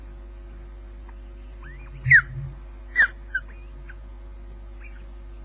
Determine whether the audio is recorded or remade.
recorded